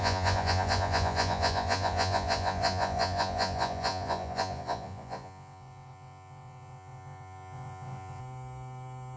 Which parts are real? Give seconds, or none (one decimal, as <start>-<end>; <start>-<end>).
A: 8.2-9.2